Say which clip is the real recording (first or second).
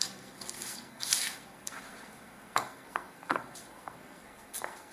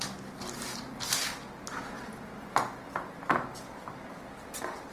second